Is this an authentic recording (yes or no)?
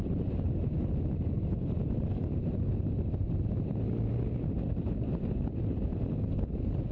yes